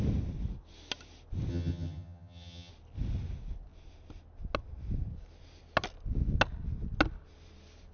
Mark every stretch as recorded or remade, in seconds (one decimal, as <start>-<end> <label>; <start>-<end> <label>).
0.0-1.5 recorded; 1.5-2.7 remade; 2.7-7.9 recorded